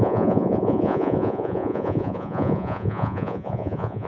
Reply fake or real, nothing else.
fake